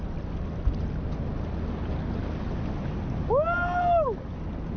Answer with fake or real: real